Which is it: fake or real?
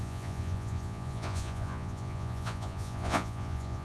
fake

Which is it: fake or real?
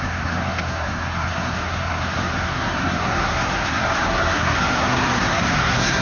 fake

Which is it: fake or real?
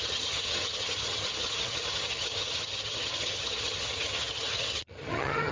fake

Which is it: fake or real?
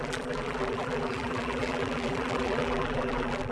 fake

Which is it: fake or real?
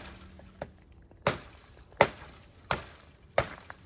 real